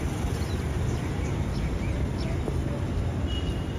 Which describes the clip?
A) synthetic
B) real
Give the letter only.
B